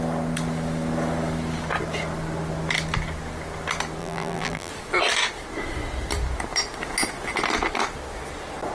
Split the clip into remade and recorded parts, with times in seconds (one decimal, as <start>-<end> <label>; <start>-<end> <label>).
0.0-4.0 recorded; 4.0-4.7 remade; 4.7-8.7 recorded